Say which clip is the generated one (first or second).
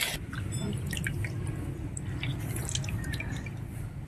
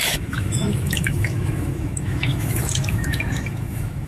second